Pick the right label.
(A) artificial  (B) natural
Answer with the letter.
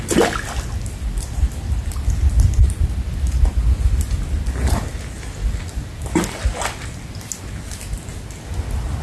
B